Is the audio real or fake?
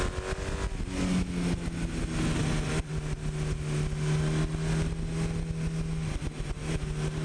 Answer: real